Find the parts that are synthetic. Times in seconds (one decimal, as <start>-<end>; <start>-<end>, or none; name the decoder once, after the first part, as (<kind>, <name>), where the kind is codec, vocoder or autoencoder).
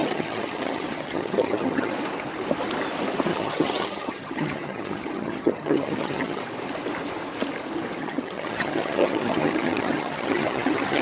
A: 0.0-1.9 (vocoder, HiFi-GAN); 3.3-6.4; 8.0-11.0